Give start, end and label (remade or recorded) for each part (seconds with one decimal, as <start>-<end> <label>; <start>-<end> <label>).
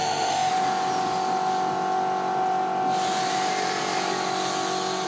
0.0-0.5 remade; 0.5-5.1 recorded